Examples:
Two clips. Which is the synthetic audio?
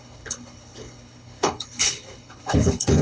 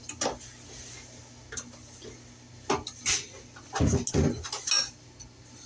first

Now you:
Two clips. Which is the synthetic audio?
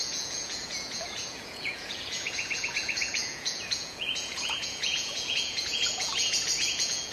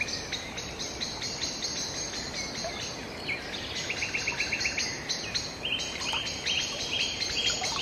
first